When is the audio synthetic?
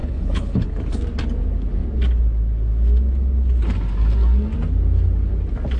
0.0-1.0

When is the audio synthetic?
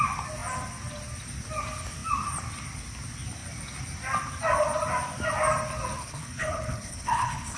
6.0-7.6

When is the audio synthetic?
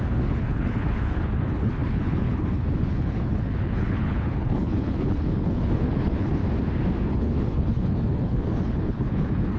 0.0-6.4; 7.0-9.6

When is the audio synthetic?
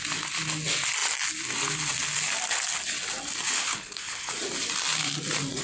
3.6-4.3